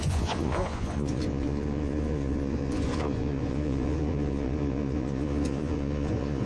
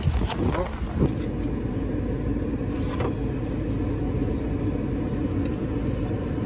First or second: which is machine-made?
first